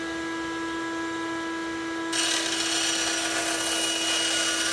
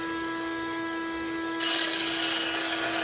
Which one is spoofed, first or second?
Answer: second